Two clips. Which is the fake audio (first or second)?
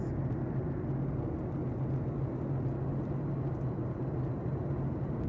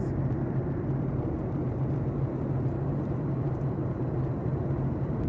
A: second